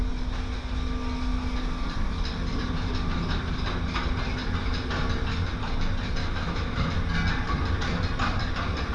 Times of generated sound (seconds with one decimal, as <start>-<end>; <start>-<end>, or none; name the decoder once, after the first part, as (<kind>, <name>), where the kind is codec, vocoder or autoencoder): 6.2-6.9 (autoencoder, DAC-VAE)